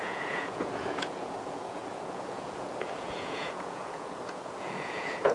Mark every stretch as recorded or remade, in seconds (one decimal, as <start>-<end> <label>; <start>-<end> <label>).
0.0-5.3 remade